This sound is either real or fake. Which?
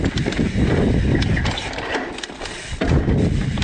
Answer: real